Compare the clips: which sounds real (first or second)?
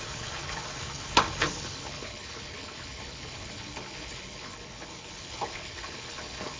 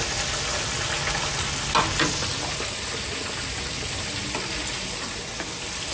second